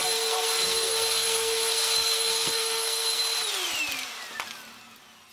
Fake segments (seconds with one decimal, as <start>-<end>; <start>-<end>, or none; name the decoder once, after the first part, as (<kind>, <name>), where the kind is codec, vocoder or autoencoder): 0.0-3.2 (codec, SNAC)

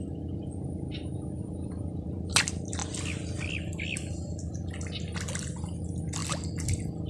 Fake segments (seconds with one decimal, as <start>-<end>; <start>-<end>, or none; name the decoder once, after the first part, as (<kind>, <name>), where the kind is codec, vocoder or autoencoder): none